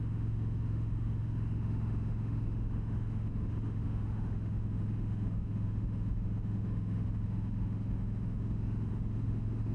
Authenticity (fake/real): fake